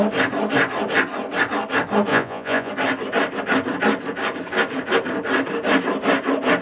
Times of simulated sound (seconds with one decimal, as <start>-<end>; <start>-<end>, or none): 2.1-2.7